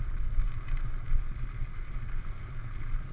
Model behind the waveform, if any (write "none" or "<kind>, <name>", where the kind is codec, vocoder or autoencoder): none